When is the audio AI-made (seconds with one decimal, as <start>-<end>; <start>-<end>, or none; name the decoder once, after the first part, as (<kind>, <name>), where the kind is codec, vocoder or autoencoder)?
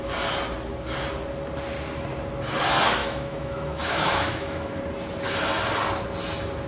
3.0-4.8 (autoencoder, DAC-VAE)